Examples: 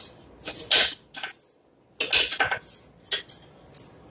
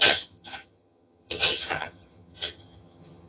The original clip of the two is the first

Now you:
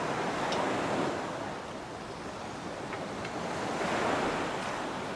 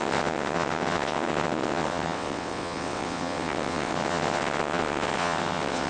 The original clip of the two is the first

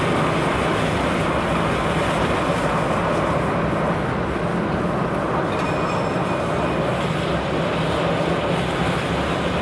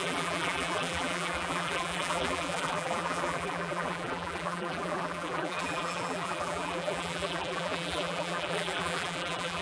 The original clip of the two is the first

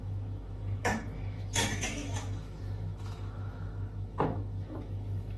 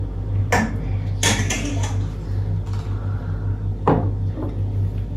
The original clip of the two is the second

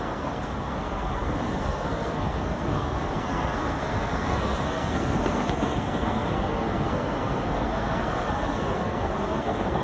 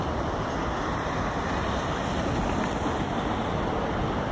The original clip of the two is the second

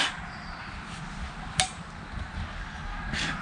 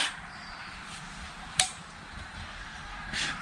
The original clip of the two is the first